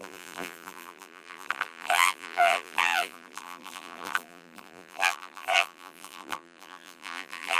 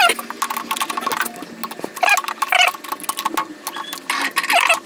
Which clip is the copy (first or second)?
first